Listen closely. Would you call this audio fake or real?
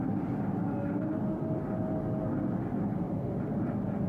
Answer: real